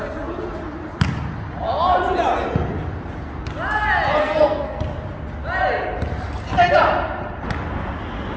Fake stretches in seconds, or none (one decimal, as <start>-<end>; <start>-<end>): 4.2-4.8